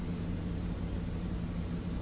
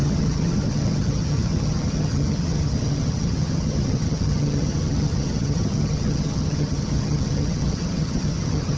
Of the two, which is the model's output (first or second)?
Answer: second